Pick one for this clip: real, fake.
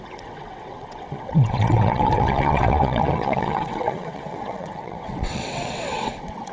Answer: fake